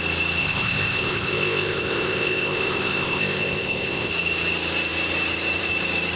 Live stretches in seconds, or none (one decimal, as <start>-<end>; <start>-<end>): 0.0-0.4; 4.1-6.2